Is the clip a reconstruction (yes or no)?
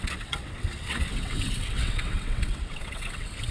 yes